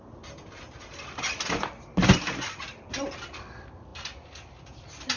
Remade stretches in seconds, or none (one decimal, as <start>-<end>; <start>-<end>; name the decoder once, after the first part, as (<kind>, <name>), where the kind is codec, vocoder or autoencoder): none